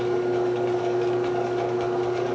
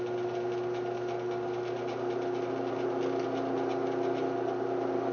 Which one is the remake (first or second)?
first